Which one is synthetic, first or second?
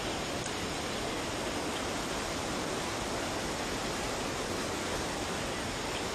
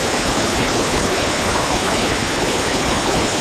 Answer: second